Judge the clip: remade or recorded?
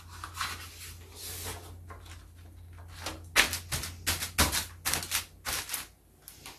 recorded